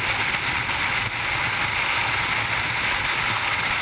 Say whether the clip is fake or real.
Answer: real